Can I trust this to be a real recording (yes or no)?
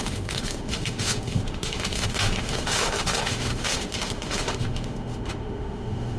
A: no